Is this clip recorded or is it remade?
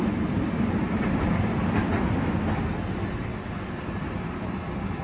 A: recorded